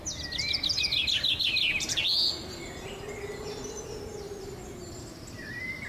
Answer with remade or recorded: recorded